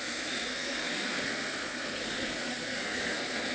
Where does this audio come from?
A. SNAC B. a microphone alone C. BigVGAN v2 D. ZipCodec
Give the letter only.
A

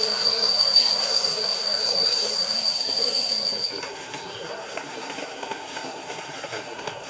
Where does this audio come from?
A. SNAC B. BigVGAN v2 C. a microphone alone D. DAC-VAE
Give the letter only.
A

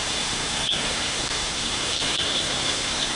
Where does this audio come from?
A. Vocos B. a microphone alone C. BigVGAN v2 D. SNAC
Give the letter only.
D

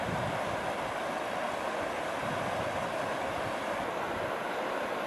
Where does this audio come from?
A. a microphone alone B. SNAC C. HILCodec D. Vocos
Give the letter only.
A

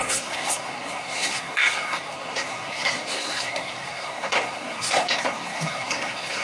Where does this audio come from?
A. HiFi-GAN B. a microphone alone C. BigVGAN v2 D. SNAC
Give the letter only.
D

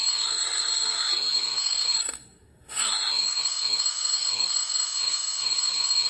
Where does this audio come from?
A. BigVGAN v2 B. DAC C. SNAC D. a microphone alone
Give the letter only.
C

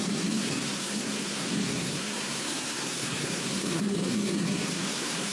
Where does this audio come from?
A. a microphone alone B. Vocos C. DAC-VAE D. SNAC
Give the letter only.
D